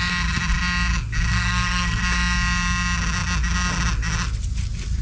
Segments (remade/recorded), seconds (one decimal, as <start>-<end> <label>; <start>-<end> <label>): 0.0-1.3 recorded; 1.3-2.0 remade; 2.0-5.0 recorded